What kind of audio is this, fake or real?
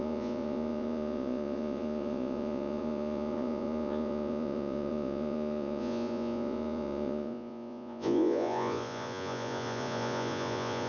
fake